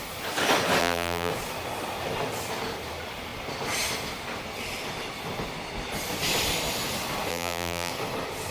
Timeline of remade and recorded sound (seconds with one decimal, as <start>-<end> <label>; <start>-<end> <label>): 0.0-0.8 recorded; 0.8-1.3 remade; 1.3-7.3 recorded; 7.3-7.9 remade; 7.9-8.5 recorded